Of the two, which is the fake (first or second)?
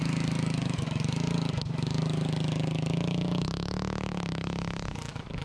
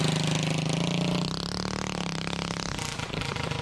first